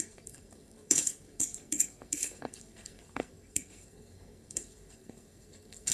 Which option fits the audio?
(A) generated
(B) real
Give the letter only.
A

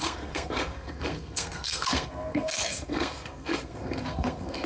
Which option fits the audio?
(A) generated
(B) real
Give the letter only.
A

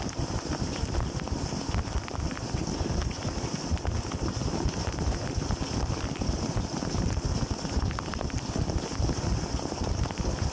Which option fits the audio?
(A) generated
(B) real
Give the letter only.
B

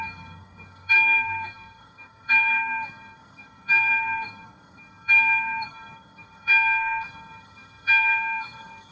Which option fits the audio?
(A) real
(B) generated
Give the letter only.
B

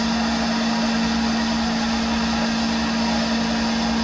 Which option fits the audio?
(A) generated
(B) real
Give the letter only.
B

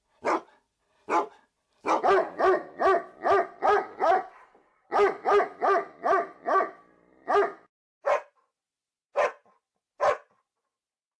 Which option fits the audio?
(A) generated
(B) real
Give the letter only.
B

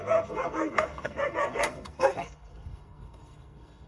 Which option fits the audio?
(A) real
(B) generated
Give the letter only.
B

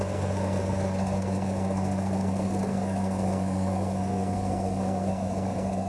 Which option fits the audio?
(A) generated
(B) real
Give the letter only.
A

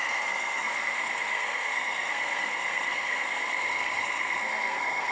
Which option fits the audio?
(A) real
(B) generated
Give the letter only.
B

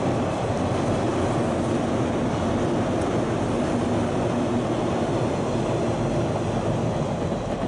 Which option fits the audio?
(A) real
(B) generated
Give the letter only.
A